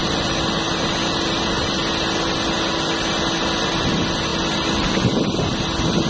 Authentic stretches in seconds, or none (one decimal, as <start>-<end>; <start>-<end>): 0.0-6.1